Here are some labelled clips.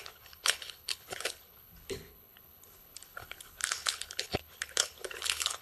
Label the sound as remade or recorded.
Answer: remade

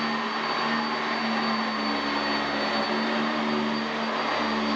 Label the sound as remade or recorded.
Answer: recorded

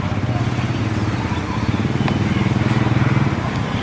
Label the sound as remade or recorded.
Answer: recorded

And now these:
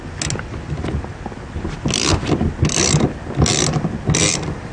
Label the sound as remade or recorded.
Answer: recorded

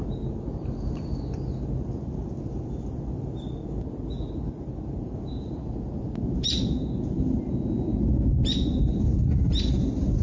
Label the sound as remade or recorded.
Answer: recorded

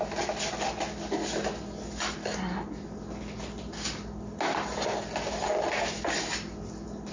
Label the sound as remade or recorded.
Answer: recorded